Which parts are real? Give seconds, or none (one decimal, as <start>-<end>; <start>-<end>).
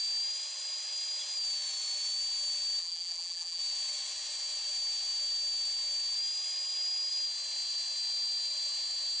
0.0-2.8; 3.6-9.2